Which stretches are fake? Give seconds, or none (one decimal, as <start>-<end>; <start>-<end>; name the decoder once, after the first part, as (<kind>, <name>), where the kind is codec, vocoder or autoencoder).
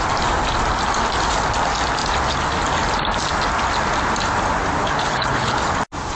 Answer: 4.8-5.6 (codec, HILCodec)